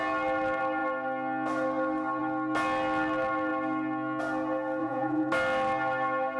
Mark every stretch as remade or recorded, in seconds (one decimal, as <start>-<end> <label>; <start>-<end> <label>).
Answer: 0.0-4.8 recorded; 4.8-5.3 remade; 5.3-6.4 recorded